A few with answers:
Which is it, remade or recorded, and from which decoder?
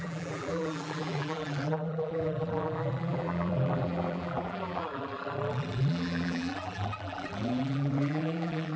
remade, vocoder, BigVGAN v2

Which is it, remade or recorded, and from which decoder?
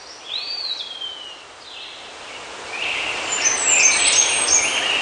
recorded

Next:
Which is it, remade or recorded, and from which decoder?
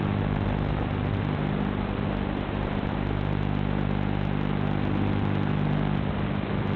recorded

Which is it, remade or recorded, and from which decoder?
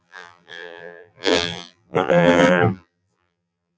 remade, vocoder, BigVGAN v2